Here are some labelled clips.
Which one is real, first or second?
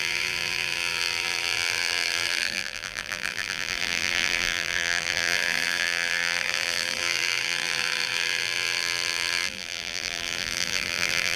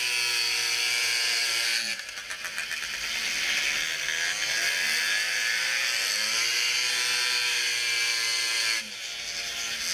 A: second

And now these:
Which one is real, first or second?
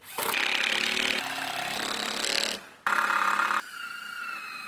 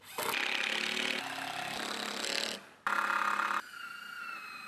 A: second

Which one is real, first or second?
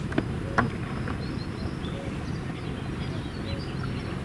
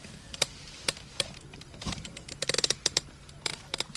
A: first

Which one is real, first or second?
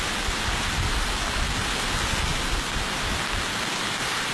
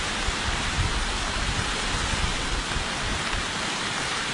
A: first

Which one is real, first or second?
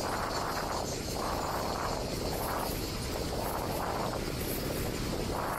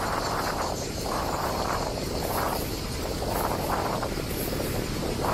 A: first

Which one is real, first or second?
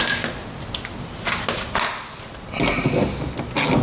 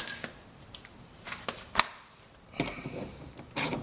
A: first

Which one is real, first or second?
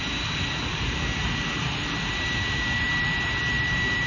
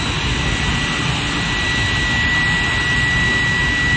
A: second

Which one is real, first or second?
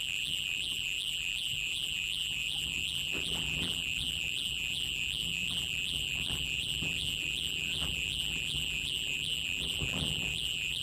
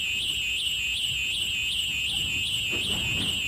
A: second